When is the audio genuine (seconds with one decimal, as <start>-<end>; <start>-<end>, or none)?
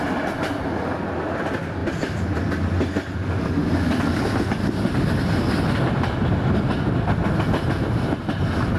0.0-8.8